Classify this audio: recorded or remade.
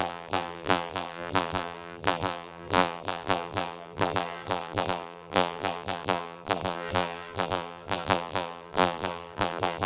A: remade